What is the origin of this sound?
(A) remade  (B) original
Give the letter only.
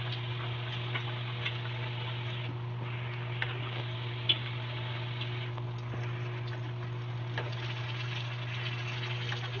B